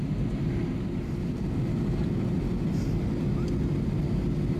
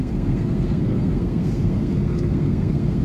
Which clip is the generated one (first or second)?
second